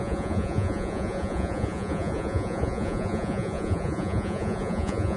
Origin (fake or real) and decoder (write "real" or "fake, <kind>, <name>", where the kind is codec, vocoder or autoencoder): fake, vocoder, Vocos